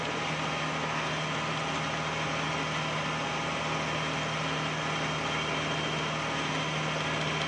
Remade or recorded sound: recorded